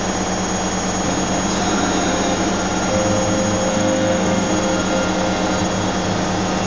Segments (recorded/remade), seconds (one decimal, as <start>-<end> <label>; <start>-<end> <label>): 0.0-3.7 recorded; 3.7-4.5 remade; 4.5-6.7 recorded